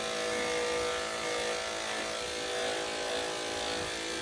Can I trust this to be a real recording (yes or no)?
yes